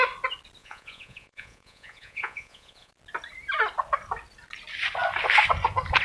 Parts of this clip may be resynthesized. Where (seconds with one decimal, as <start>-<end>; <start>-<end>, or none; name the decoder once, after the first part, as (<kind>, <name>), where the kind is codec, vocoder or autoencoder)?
0.6-2.9 (vocoder, Vocos)

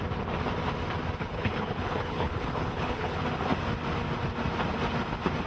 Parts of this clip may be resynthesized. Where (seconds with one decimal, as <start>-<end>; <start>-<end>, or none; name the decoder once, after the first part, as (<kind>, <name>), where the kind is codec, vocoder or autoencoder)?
1.2-3.2 (codec, HILCodec)

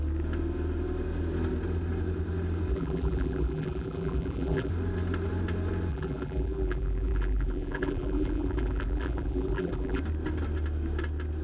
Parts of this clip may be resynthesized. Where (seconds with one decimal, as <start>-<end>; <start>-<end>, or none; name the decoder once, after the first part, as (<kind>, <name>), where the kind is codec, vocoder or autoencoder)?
2.7-4.7 (vocoder, BigVGAN v2); 5.9-10.0

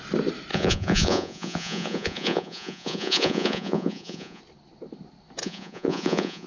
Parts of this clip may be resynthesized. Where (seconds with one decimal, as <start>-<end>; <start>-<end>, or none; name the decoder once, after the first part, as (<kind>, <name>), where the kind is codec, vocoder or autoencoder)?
0.5-4.4 (vocoder, Vocos); 5.4-6.5

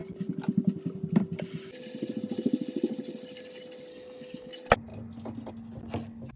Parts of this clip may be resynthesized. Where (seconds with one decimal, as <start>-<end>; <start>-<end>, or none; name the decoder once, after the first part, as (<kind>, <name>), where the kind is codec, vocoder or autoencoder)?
3.9-4.5 (codec, DAC)

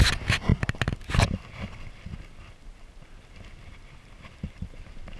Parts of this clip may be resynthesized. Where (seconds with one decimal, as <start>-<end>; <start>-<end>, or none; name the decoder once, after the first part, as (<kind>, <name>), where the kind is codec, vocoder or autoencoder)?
none

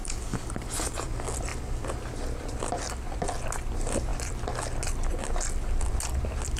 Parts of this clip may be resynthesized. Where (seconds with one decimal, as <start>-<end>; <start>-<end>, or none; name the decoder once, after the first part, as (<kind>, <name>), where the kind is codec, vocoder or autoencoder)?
0.0-0.5 (codec, DAC)

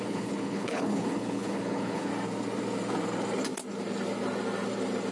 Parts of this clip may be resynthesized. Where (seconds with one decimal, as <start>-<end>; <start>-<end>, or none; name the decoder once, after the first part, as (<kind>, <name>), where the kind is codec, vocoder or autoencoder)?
0.0-2.1 (codec, HILCodec)